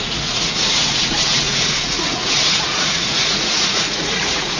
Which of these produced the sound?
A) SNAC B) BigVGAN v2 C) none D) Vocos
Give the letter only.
D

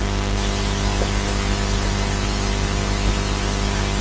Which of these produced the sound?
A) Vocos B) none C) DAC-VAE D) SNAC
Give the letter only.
B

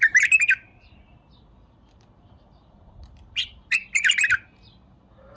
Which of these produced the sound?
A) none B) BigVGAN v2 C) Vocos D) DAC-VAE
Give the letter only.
A